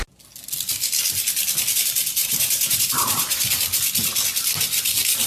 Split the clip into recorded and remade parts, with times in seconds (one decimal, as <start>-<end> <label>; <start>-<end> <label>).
0.0-2.2 recorded; 2.2-3.5 remade; 3.5-5.3 recorded